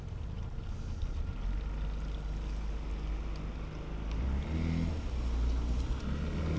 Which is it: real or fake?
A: real